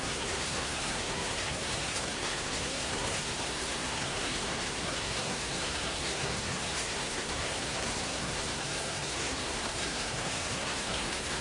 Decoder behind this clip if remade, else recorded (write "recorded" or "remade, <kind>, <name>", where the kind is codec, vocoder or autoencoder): remade, codec, SNAC